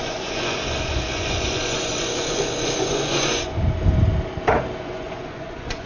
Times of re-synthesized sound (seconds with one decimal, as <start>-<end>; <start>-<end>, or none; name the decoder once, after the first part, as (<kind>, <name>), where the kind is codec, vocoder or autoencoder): 0.0-3.5 (vocoder, Vocos); 4.8-5.9